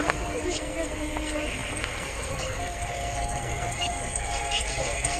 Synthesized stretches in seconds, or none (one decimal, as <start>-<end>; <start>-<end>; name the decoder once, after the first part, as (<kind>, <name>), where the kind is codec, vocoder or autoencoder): 0.0-5.2 (codec, SNAC)